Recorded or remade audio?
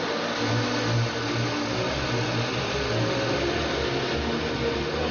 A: recorded